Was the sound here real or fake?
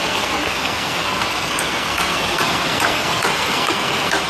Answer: fake